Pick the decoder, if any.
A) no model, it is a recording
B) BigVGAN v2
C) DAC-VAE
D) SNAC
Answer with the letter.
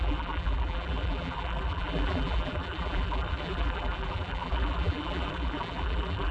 B